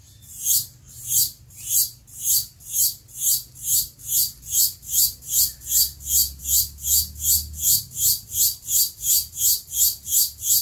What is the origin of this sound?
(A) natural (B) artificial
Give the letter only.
A